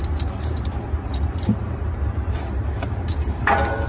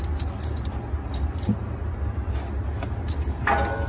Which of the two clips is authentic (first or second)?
second